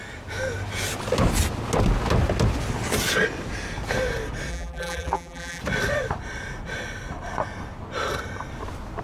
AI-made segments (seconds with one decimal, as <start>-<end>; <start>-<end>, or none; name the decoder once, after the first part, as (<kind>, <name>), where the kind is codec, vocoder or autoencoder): 4.5-5.6 (vocoder, BigVGAN v2)